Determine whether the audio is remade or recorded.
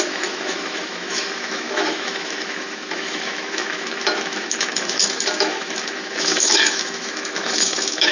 remade